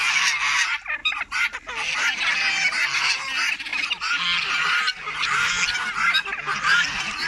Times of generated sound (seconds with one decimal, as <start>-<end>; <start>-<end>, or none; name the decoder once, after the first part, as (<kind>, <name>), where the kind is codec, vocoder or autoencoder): none